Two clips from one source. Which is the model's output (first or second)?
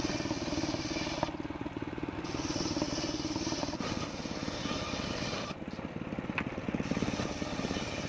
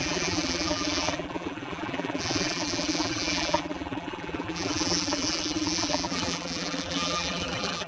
second